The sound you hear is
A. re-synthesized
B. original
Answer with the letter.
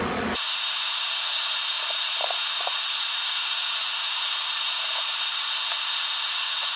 A